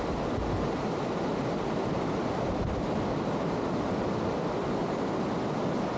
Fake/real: real